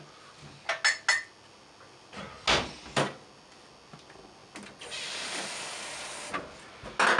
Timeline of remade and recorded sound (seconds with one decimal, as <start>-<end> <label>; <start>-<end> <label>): 0.0-7.2 recorded